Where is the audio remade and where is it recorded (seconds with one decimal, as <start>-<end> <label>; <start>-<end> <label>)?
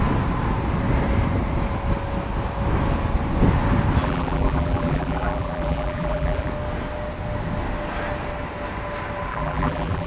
0.0-4.0 recorded; 4.0-6.5 remade; 6.5-9.3 recorded; 9.3-10.1 remade